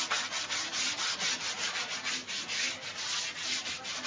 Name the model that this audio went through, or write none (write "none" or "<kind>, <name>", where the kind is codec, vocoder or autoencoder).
none